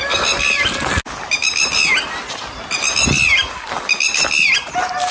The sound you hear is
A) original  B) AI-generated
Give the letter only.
A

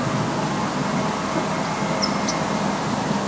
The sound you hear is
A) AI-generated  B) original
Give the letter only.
B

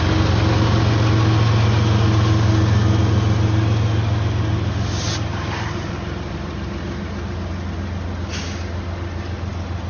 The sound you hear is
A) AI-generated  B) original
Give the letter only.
B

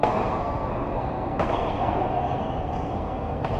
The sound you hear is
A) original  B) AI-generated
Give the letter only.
B